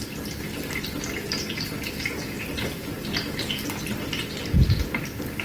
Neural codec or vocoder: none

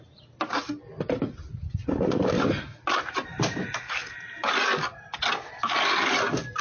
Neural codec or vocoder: none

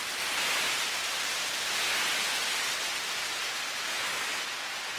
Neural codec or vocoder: none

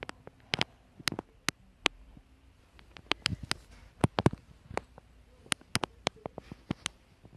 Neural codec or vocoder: none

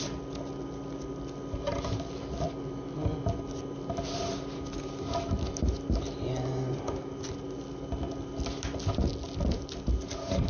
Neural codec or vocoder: none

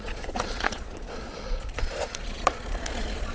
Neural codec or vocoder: vocoder, Vocos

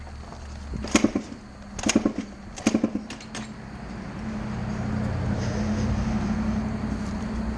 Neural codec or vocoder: none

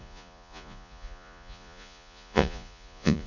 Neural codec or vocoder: vocoder, Vocos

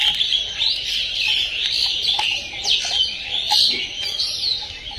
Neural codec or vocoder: none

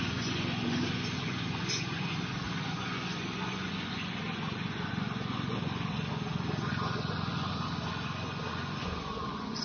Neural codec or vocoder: vocoder, Vocos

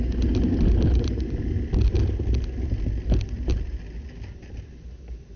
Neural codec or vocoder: none